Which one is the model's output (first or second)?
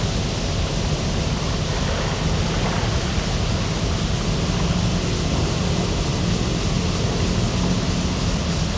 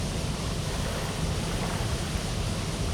second